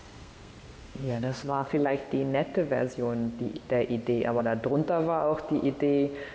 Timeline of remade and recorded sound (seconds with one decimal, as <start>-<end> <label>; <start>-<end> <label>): 0.0-2.1 remade; 2.1-6.3 recorded